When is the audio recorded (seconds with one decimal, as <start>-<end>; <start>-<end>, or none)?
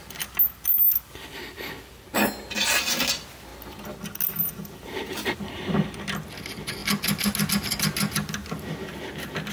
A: 0.0-9.5